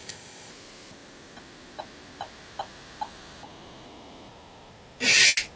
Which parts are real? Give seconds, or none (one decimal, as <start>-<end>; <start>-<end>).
0.5-5.6